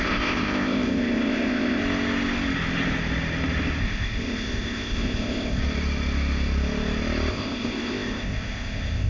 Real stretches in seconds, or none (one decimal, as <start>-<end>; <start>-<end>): 1.8-3.8; 5.6-7.3